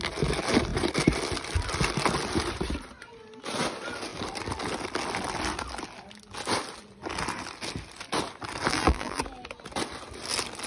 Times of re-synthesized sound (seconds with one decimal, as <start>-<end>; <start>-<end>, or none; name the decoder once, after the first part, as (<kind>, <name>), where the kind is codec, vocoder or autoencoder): 8.7-9.2 (vocoder, BigVGAN v2)